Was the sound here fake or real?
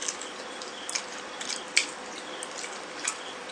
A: fake